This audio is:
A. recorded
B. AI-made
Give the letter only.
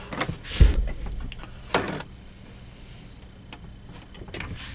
A